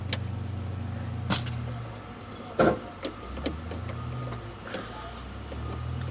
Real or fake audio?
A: real